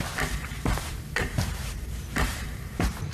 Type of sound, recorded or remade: remade